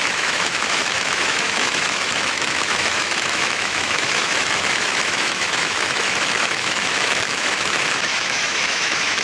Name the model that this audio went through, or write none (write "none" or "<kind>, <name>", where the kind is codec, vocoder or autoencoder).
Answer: autoencoder, DAC-VAE